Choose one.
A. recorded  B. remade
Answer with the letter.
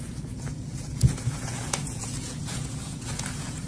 B